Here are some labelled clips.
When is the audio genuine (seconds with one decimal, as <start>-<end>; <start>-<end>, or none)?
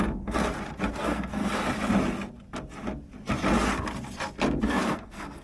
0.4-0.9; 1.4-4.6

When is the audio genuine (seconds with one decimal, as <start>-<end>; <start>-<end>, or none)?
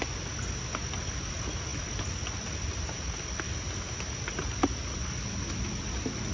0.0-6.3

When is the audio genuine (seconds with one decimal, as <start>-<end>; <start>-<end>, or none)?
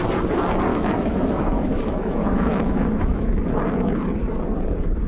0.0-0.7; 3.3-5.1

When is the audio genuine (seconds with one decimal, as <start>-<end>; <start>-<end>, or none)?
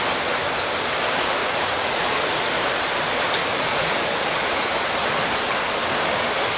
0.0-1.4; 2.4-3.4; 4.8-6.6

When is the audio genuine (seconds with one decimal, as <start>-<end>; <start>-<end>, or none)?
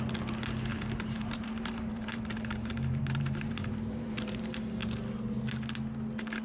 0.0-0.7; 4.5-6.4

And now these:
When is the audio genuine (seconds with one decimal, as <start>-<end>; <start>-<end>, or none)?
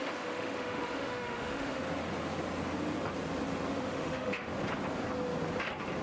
1.8-3.7; 4.5-6.0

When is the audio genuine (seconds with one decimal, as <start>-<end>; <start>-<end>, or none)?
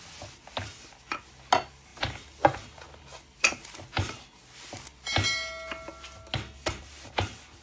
0.0-7.6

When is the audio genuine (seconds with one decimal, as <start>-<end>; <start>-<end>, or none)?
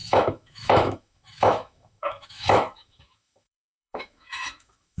none